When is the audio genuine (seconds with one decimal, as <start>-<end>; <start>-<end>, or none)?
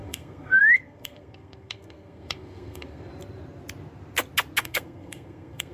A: 3.1-4.6